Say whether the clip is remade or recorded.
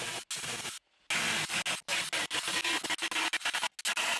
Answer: recorded